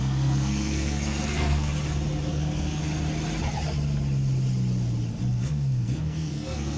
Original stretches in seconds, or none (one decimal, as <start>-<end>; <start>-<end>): 1.7-2.3; 2.8-5.3